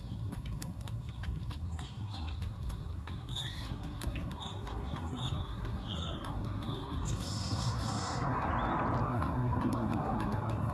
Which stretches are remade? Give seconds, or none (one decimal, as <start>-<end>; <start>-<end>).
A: 0.0-8.5; 9.0-10.7